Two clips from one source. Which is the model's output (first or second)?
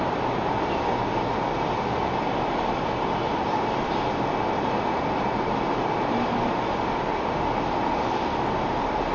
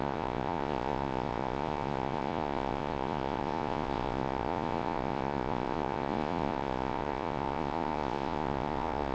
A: second